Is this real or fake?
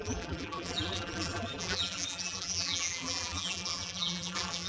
fake